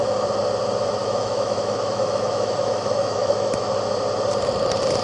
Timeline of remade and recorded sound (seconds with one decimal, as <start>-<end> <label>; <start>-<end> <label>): 0.0-1.0 recorded; 1.0-3.7 remade; 3.7-5.0 recorded